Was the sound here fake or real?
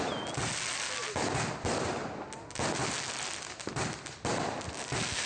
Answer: real